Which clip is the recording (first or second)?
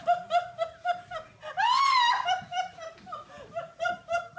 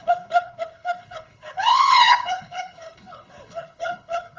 first